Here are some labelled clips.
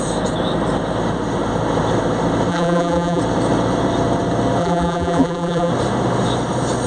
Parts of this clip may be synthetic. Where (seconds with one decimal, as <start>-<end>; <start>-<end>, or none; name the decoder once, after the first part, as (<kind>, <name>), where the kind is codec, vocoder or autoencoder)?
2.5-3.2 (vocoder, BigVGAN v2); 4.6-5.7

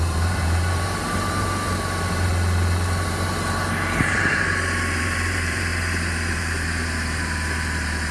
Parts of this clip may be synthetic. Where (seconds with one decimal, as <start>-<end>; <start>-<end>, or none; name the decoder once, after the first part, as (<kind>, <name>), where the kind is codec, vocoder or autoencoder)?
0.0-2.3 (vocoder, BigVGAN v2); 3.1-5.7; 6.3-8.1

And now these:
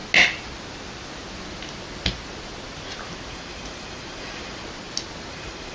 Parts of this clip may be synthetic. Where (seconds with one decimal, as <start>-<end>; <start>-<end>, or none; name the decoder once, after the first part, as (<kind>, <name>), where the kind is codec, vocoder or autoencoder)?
3.3-4.6 (vocoder, BigVGAN v2); 5.3-5.7